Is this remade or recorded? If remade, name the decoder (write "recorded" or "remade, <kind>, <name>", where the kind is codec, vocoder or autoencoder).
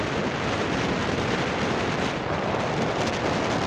recorded